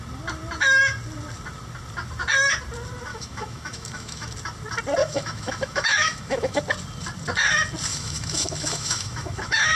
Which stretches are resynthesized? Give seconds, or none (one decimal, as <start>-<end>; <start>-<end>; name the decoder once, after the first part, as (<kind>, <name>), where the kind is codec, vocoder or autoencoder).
3.1-4.3 (autoencoder, DAC-VAE); 5.0-6.6; 7.9-9.8